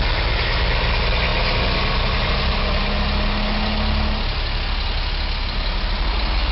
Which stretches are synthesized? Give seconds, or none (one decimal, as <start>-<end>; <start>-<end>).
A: none